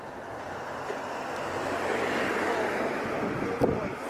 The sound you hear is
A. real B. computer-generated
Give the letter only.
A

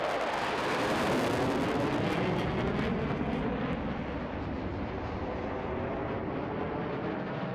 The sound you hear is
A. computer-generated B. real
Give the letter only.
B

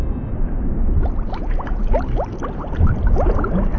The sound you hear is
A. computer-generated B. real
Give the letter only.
B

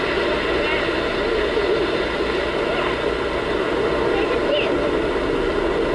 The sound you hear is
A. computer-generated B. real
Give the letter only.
B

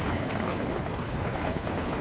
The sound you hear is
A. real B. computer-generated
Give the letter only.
B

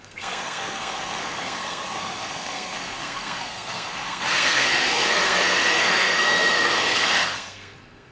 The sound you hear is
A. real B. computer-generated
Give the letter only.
B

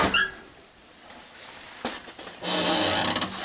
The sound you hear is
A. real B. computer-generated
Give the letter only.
A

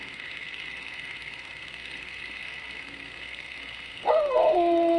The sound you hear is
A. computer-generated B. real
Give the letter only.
A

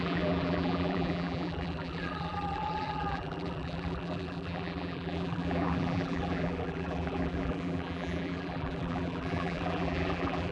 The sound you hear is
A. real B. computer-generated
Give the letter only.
B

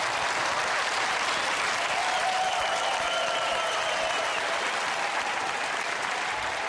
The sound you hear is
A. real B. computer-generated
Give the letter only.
A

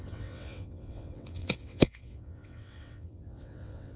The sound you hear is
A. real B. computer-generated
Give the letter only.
B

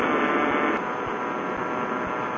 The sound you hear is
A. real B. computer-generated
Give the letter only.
A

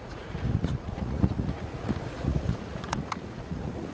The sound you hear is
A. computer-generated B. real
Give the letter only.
A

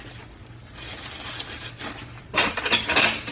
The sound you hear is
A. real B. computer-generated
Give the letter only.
A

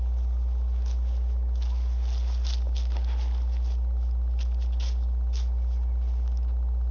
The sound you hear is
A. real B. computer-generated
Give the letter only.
A